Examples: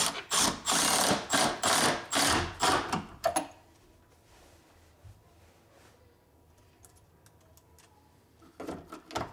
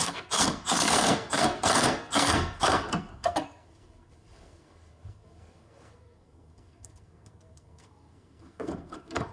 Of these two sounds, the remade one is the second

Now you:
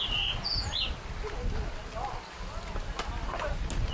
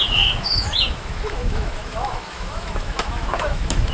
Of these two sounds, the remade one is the second